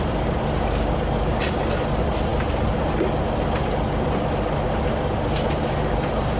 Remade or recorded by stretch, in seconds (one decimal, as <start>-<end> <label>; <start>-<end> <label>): 0.0-6.4 recorded